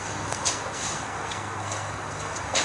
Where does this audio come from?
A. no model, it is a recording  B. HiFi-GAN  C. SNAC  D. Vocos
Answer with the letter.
C